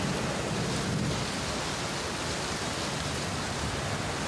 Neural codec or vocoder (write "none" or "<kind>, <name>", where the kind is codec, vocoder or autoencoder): none